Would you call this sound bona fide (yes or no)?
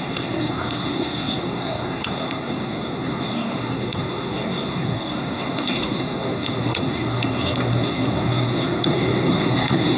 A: no